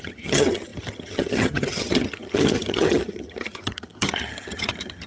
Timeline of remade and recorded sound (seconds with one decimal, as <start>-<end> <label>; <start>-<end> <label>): 0.0-5.1 remade